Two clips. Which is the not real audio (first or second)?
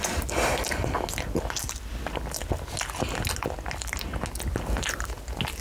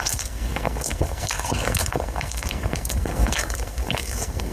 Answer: second